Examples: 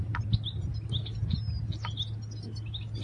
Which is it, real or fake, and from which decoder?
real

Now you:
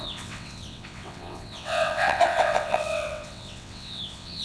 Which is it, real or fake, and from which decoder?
fake, vocoder, WaveNeXt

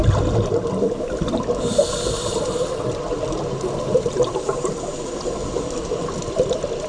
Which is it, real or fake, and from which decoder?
fake, vocoder, BigVGAN v2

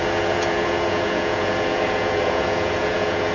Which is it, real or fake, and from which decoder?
fake, vocoder, Vocos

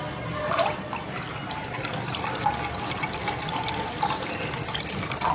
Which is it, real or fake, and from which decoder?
real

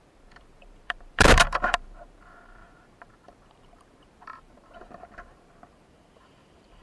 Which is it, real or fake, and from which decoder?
fake, vocoder, BigVGAN v2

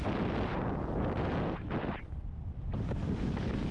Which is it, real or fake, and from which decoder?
real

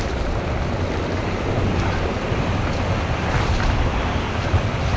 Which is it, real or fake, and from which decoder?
real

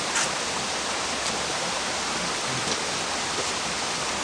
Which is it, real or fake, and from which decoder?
real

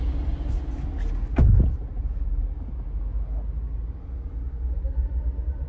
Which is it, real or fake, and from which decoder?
real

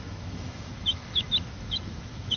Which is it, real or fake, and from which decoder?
fake, autoencoder, DAC-VAE